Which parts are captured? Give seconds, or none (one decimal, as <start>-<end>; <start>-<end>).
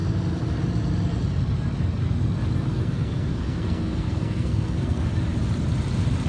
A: 0.0-2.7; 5.1-6.3